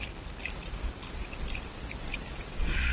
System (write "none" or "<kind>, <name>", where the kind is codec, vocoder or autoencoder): none